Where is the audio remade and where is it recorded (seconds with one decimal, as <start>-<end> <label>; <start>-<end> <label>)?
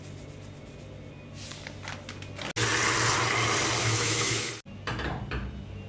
0.0-3.8 recorded; 3.8-4.5 remade; 4.5-5.9 recorded